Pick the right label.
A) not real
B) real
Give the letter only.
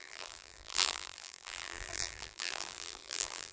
A